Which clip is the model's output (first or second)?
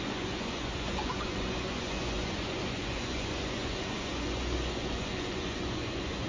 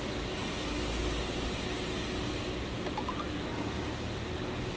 first